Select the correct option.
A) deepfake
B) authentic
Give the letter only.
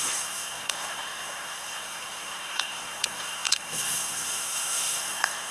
A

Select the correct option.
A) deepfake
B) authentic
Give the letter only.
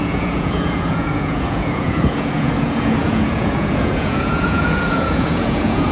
A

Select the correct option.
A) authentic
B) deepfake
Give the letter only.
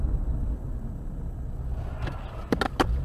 A